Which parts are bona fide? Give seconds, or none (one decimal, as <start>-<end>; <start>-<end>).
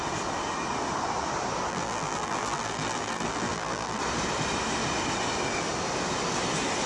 0.0-1.7; 4.0-6.9